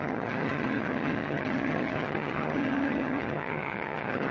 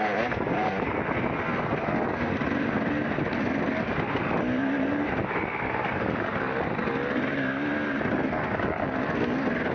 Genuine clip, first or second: second